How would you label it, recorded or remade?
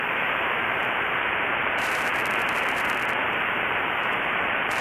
remade